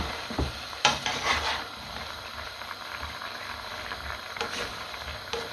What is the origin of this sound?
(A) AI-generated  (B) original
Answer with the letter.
A